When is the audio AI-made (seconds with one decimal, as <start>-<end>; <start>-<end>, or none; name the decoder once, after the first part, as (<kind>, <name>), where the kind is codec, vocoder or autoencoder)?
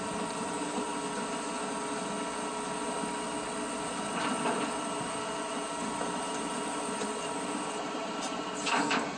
0.0-0.9 (vocoder, BigVGAN v2); 4.9-9.2